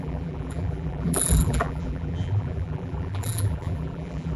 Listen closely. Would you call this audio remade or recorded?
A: remade